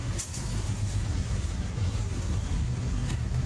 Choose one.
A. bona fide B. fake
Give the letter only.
B